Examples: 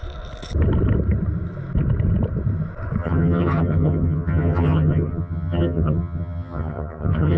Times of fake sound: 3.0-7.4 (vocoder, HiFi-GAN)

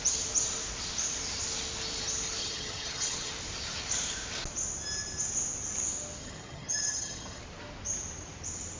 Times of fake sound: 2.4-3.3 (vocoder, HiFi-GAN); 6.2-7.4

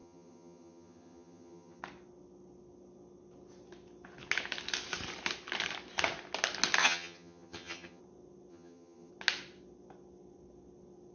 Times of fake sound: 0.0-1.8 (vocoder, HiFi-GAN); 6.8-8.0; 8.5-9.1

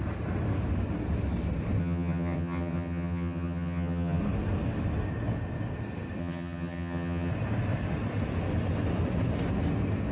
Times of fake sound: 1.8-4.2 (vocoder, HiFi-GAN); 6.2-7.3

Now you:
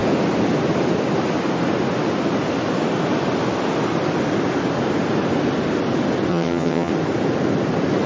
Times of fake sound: 6.3-6.9 (vocoder, HiFi-GAN)